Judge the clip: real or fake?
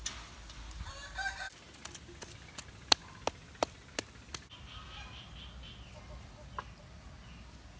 real